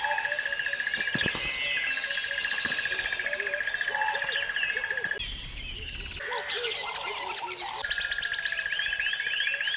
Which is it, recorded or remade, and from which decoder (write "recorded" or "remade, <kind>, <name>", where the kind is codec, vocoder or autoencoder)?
recorded